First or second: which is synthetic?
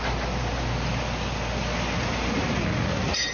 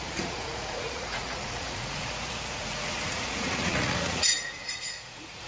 second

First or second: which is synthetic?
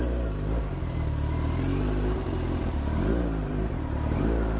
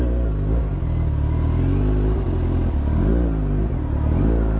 first